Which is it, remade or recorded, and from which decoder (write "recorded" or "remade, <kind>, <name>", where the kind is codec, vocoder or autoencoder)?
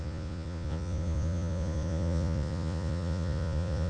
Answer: remade, vocoder, Vocos